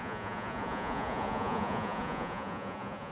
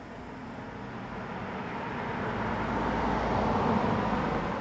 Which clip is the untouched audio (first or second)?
second